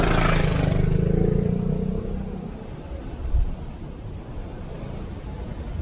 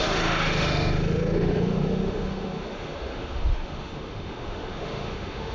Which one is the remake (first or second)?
second